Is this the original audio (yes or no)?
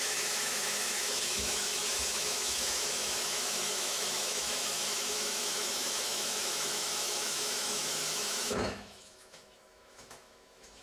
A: no